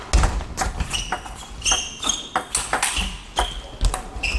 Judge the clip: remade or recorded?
recorded